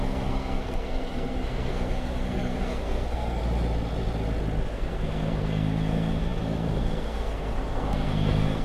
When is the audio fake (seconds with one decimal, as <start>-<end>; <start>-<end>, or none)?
0.0-3.4; 4.7-8.6